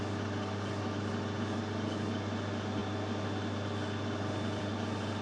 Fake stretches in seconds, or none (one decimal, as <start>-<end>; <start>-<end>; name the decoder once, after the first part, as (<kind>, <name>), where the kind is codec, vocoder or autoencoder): none